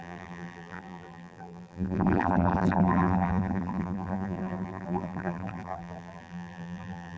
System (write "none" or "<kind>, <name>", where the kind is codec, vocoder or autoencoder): vocoder, BigVGAN v2